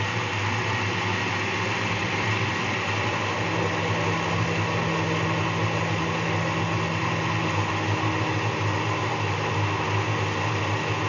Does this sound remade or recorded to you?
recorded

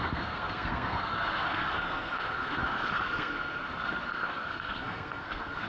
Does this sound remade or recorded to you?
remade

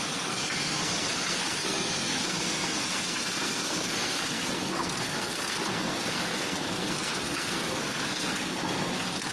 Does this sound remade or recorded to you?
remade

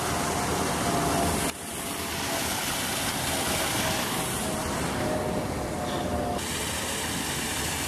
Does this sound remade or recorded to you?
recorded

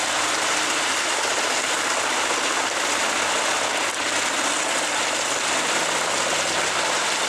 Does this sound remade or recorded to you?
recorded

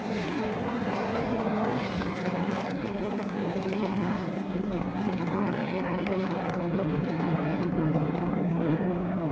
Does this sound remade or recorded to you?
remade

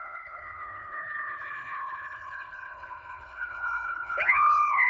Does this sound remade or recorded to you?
remade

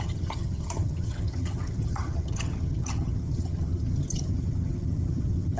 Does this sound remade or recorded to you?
remade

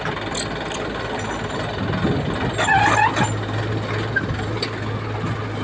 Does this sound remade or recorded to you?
recorded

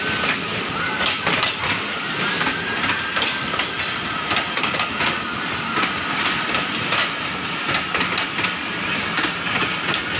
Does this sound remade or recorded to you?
recorded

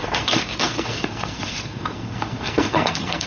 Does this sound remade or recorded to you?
remade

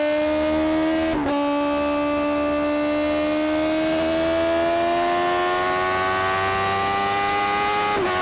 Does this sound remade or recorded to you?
recorded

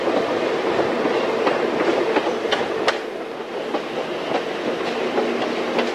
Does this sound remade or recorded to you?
recorded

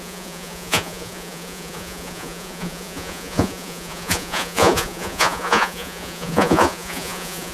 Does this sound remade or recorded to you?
remade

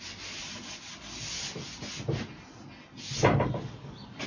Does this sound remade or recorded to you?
recorded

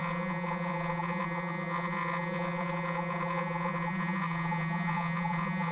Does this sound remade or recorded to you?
remade